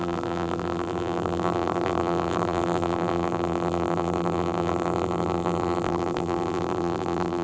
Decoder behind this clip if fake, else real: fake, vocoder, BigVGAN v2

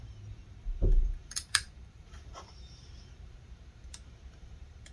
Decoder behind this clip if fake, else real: fake, vocoder, BigVGAN v2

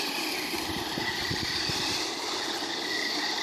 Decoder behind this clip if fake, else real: real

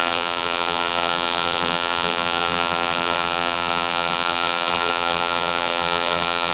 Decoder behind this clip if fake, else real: fake, vocoder, BigVGAN v2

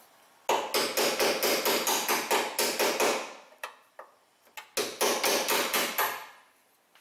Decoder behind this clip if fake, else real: real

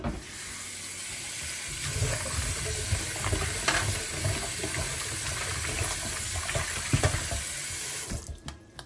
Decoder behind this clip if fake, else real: real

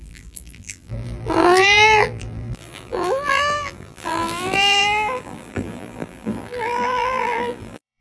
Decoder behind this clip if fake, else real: fake, vocoder, BigVGAN v2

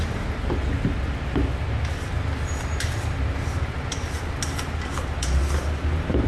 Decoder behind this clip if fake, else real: real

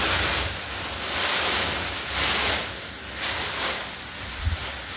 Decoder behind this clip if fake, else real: real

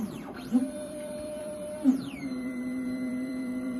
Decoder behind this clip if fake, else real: fake, vocoder, BigVGAN v2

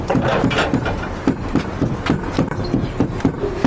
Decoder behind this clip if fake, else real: real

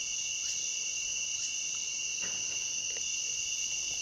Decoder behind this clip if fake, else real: real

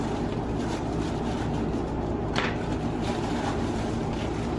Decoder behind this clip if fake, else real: fake, vocoder, BigVGAN v2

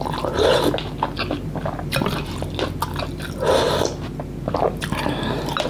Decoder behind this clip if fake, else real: real